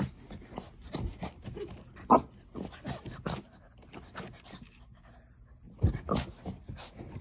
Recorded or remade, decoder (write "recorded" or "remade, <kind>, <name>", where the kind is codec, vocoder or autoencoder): recorded